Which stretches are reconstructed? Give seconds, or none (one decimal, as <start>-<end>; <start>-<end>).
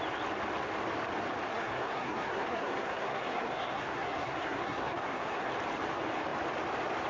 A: 1.5-5.5